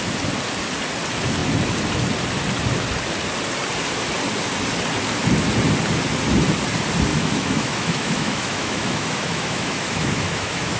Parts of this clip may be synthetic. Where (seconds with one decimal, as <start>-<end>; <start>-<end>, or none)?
7.1-10.8